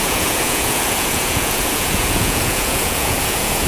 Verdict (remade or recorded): remade